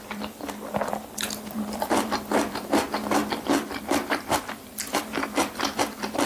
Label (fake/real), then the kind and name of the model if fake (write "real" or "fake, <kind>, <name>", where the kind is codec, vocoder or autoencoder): fake, vocoder, BigVGAN v2